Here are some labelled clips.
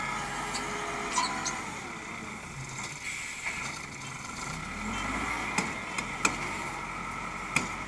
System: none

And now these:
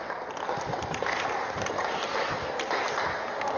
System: none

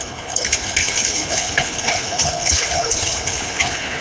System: codec, HILCodec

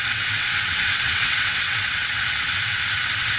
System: vocoder, WaveNeXt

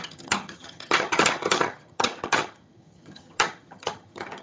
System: vocoder, HiFi-GAN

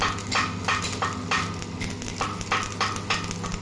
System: none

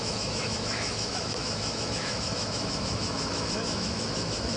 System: autoencoder, DAC-VAE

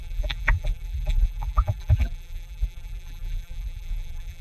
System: vocoder, BigVGAN v2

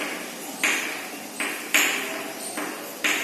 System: none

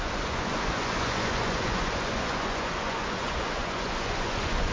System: vocoder, Vocos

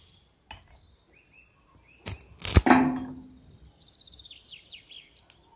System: none